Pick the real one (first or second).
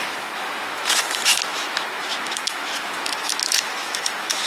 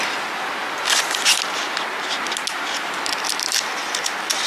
second